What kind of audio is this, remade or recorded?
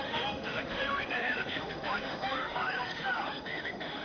remade